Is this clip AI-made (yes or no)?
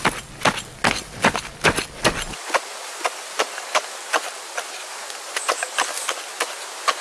no